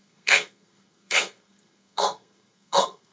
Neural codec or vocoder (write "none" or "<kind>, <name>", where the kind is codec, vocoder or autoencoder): codec, SNAC